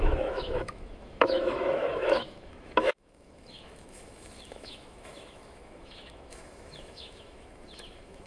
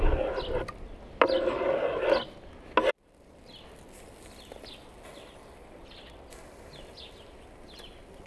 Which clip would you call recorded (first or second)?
second